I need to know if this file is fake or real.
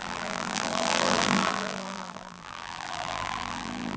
fake